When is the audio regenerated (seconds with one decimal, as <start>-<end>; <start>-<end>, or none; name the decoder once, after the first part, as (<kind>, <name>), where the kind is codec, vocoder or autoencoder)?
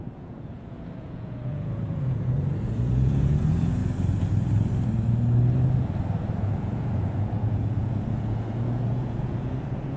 0.0-3.8 (vocoder, Vocos); 6.4-10.0